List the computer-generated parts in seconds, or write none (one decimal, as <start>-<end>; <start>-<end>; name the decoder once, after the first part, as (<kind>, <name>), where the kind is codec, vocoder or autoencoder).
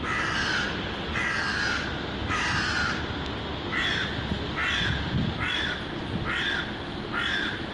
none